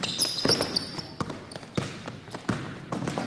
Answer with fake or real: real